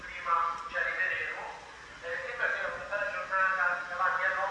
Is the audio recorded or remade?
recorded